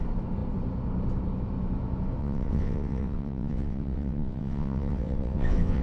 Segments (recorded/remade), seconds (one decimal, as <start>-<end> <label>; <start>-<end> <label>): 0.0-2.2 recorded; 2.2-5.8 remade